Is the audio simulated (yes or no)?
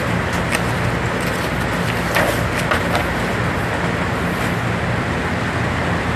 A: no